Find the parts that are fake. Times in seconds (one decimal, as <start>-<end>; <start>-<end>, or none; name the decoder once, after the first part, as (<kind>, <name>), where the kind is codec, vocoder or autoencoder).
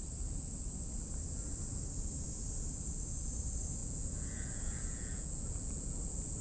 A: 3.8-6.0 (vocoder, Vocos)